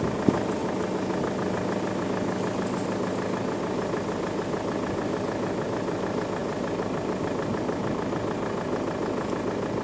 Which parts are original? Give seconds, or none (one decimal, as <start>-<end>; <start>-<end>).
0.0-6.4; 8.1-9.8